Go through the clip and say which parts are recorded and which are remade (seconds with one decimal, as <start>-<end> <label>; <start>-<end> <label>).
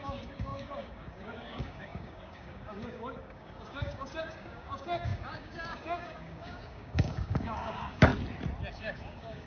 0.0-8.1 remade; 8.1-8.7 recorded; 8.7-9.5 remade